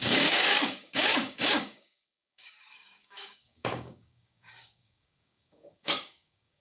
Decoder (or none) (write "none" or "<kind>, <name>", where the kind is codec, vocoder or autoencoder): codec, DAC